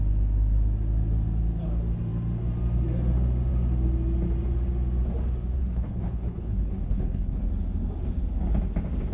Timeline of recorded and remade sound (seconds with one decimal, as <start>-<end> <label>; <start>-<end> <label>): 0.0-5.6 recorded; 5.6-7.4 remade; 7.4-9.1 recorded